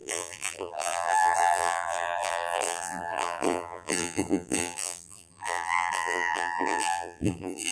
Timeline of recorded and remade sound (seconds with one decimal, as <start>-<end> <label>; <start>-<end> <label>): 0.0-7.7 remade